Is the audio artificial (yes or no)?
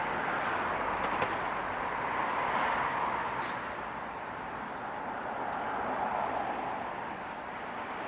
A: no